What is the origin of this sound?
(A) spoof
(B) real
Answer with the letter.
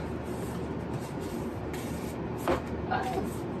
B